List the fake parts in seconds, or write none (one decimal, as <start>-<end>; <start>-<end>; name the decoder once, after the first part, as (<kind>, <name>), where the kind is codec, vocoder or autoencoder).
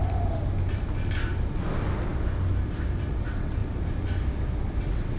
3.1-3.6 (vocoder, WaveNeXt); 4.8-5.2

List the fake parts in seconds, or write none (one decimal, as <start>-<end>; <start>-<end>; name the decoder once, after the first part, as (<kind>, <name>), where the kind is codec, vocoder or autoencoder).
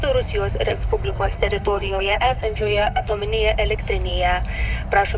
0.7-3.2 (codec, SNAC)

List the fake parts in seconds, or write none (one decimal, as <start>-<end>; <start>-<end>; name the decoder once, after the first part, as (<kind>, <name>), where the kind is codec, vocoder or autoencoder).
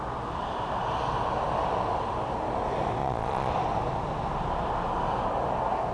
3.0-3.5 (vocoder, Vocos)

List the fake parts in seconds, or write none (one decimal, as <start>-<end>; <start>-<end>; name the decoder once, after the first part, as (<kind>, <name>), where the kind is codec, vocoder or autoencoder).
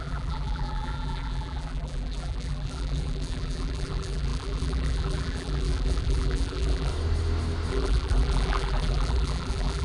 0.0-6.9 (vocoder, BigVGAN v2); 7.7-9.8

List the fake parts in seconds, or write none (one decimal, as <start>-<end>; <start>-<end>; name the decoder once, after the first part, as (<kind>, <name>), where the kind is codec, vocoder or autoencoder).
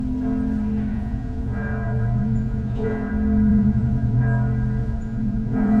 0.9-3.1 (vocoder, Vocos); 3.5-4.2; 4.8-5.8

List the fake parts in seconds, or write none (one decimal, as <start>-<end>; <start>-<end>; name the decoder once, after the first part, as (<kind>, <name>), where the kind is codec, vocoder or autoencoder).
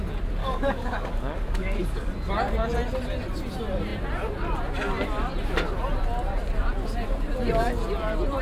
0.4-2.1 (codec, DAC)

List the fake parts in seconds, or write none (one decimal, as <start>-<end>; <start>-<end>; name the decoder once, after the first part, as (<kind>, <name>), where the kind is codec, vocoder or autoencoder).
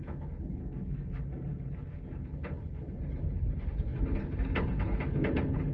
0.0-0.6 (codec, HILCodec); 2.2-5.7